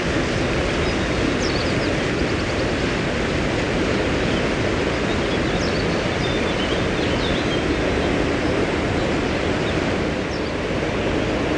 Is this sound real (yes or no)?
yes